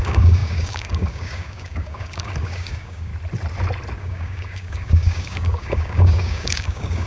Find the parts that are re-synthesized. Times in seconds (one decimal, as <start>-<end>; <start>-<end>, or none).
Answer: 0.0-3.1; 4.0-7.1